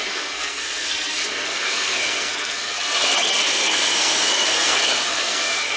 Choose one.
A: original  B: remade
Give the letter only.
B